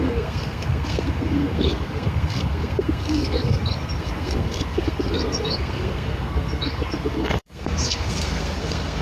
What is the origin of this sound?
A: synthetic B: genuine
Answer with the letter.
A